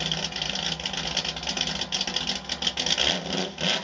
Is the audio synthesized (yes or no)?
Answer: no